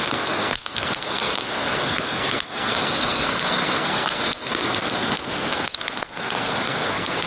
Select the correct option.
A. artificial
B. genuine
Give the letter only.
A